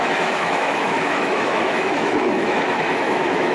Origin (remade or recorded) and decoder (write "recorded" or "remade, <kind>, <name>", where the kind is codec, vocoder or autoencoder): remade, autoencoder, DAC-VAE